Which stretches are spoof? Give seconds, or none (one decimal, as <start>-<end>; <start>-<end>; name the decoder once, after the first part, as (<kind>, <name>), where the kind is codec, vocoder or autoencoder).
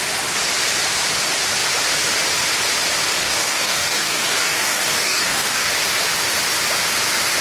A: 3.1-5.7 (codec, DAC)